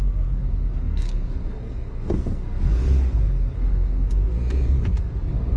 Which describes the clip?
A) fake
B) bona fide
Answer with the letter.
A